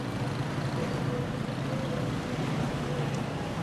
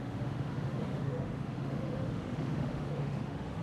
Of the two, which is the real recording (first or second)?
first